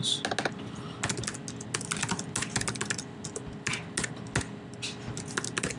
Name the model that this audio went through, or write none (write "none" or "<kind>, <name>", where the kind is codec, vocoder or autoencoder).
none